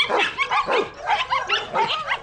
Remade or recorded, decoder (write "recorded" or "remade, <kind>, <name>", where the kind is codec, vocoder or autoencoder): recorded